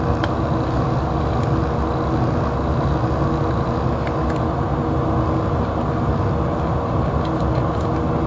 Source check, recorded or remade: recorded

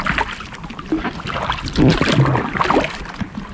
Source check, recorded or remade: recorded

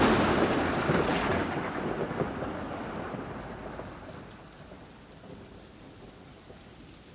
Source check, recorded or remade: recorded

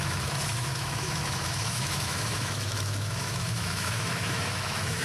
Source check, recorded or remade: remade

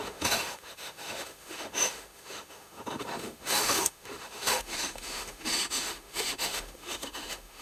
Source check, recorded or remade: remade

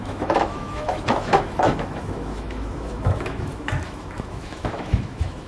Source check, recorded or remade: remade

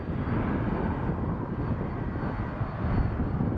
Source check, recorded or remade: recorded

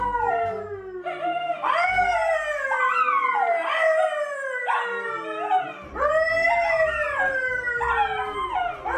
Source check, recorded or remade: recorded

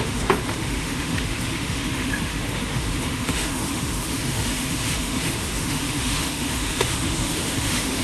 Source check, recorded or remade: remade